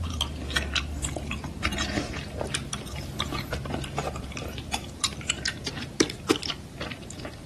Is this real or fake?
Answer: fake